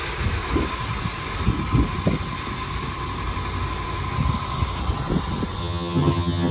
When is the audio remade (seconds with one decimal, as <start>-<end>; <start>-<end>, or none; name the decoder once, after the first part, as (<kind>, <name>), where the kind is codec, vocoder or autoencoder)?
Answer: 5.6-6.5 (vocoder, HiFi-GAN)